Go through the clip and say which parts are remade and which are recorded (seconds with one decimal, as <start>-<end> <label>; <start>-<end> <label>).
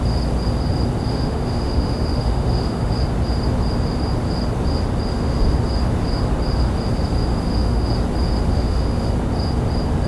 0.0-1.1 recorded; 1.1-2.9 remade; 2.9-5.1 recorded; 5.1-5.6 remade; 5.6-7.3 recorded; 7.3-7.9 remade; 7.9-8.5 recorded; 8.5-9.1 remade; 9.1-10.1 recorded